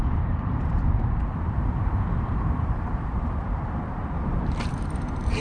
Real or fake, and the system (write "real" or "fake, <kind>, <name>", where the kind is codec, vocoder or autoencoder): fake, vocoder, BigVGAN v2